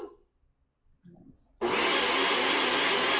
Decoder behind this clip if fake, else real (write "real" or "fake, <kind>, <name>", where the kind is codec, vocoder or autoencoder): real